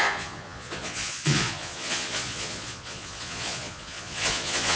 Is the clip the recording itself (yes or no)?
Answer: no